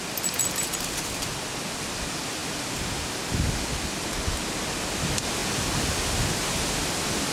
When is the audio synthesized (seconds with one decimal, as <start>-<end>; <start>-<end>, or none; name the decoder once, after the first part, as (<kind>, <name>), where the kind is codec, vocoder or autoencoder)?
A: none